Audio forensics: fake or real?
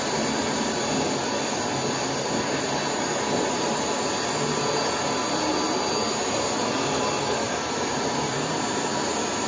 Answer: real